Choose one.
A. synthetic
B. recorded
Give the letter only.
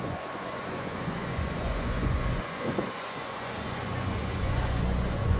A